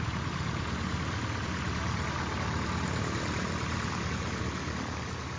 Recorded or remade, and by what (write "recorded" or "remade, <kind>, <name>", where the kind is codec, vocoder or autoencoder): recorded